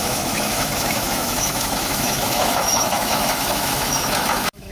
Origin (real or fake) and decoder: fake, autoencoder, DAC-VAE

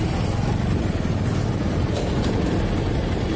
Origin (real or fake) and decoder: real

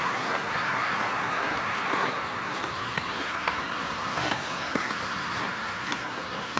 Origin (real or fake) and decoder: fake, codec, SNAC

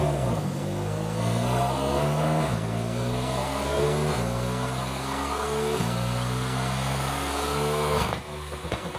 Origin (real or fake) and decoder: fake, codec, SNAC